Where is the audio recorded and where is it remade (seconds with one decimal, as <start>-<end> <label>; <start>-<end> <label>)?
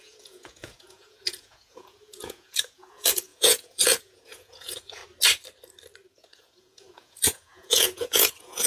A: 0.0-5.0 remade; 5.0-6.1 recorded; 6.1-8.7 remade